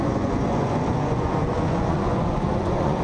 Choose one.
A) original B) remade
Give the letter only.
B